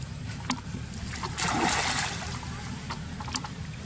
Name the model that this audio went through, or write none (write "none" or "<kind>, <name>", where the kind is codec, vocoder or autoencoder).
none